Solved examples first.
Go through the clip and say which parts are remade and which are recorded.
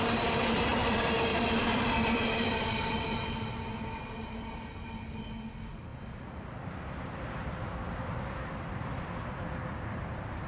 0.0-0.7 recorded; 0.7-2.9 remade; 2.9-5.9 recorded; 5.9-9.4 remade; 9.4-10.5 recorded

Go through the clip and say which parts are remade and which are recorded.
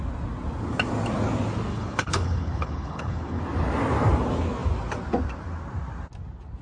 0.0-1.7 recorded; 1.7-3.4 remade; 3.4-6.6 recorded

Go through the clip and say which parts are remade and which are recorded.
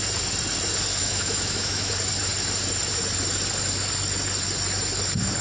0.0-1.0 recorded; 1.0-1.9 remade; 1.9-5.4 recorded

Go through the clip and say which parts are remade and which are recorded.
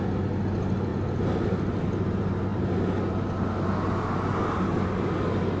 0.0-5.6 recorded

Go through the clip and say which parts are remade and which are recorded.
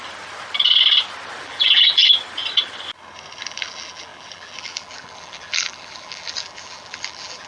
0.0-1.4 recorded; 1.4-2.0 remade; 2.0-3.4 recorded; 3.4-7.5 remade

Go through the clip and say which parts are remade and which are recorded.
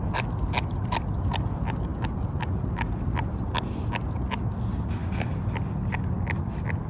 0.0-1.9 recorded; 1.9-2.9 remade; 2.9-6.9 recorded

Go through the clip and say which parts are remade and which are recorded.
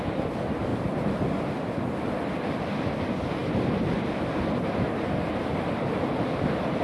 0.0-0.7 recorded; 0.7-2.1 remade; 2.1-6.8 recorded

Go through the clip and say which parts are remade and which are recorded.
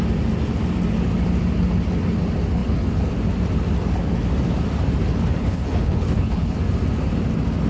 0.0-5.4 recorded; 5.4-6.6 remade; 6.6-7.7 recorded